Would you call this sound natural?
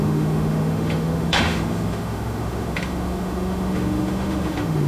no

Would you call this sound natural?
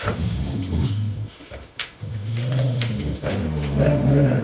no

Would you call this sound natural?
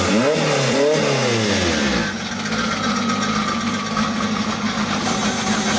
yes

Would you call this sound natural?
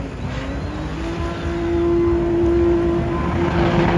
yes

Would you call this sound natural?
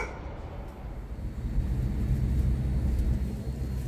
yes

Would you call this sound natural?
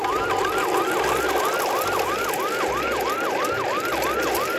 yes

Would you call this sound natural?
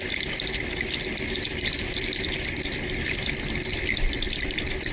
yes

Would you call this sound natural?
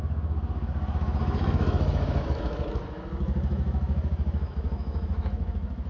no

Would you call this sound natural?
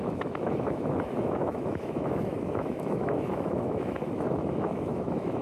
no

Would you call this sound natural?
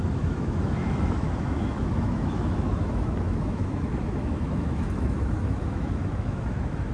no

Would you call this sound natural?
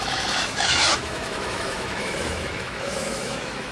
no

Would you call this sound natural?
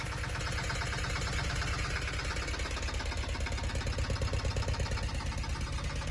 yes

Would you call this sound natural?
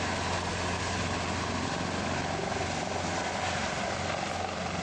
yes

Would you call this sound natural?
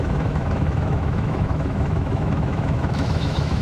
no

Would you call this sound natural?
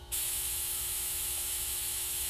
no